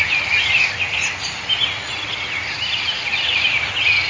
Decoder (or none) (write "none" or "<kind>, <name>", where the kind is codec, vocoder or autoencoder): none